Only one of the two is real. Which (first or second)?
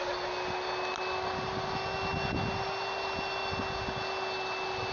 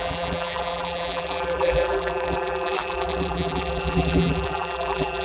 first